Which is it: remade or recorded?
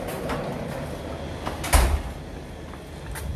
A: recorded